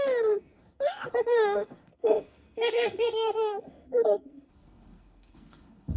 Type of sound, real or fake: fake